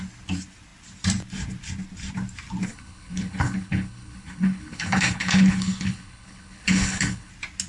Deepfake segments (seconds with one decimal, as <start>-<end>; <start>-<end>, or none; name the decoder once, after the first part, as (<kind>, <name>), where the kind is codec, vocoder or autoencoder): 2.7-7.3 (codec, HILCodec)